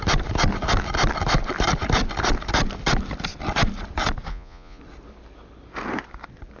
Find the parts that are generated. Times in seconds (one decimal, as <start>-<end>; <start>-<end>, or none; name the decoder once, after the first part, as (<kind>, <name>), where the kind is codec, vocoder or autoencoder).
4.3-4.8 (vocoder, Vocos)